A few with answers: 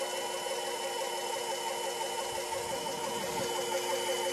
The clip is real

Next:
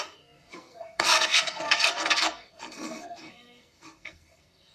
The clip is fake